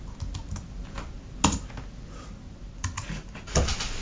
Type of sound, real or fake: real